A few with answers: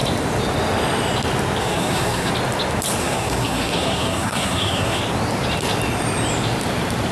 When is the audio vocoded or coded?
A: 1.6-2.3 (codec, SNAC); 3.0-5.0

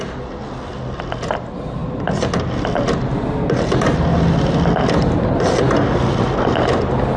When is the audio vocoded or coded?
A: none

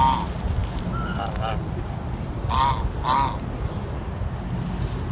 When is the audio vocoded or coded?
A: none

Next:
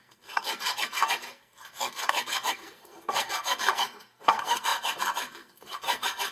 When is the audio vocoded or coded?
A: 0.0-6.3 (codec, SNAC)

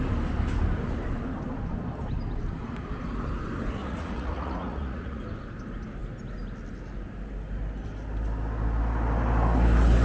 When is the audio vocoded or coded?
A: 3.8-5.2 (vocoder, Vocos)

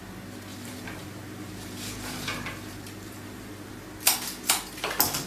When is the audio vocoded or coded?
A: 0.5-3.7 (vocoder, BigVGAN v2)

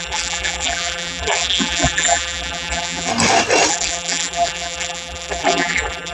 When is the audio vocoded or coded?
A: 0.0-3.1 (vocoder, BigVGAN v2); 3.7-6.1

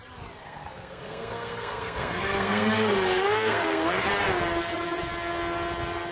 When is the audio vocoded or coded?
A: 0.4-4.1 (codec, SNAC)